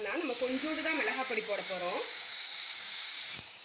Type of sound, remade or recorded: remade